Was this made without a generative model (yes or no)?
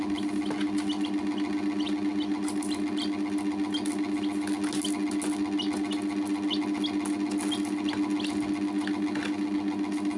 yes